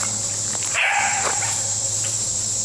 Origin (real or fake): fake